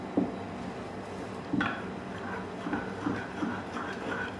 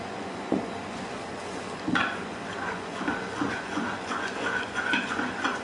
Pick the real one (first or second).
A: first